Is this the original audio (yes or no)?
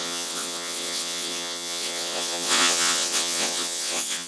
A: no